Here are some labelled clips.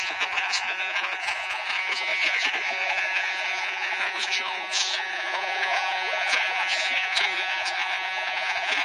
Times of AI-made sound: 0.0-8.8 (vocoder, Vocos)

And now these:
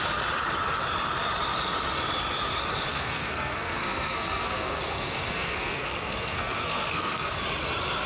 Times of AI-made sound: 2.9-7.4 (codec, SNAC)